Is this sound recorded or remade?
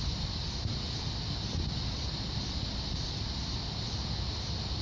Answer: recorded